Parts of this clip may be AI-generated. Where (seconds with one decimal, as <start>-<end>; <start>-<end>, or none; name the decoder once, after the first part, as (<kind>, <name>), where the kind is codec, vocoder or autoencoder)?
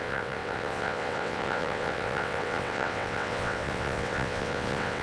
0.0-5.0 (vocoder, WaveNeXt)